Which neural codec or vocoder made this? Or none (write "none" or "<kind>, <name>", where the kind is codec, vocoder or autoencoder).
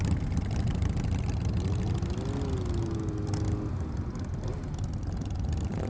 none